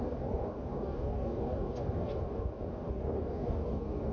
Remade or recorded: remade